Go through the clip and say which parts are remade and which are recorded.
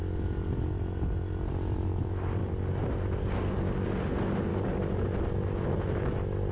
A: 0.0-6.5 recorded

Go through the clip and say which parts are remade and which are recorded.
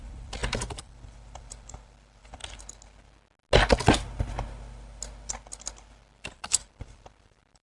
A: 0.0-2.4 remade; 2.4-6.3 recorded; 6.3-7.6 remade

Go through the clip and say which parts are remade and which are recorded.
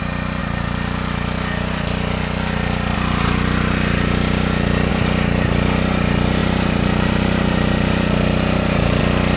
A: 0.0-6.4 recorded; 6.4-9.0 remade; 9.0-9.4 recorded